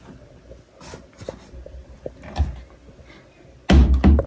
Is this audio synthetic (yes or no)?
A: no